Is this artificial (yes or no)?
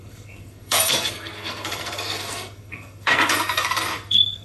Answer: yes